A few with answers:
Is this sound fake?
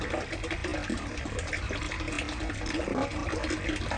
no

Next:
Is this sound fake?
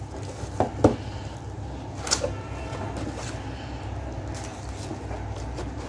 no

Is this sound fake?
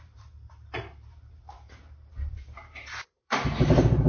yes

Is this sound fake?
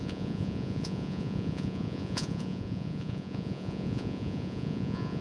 yes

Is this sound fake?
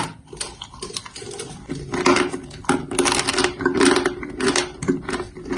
no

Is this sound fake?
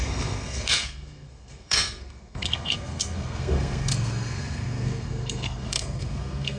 yes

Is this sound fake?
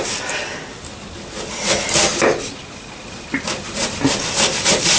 no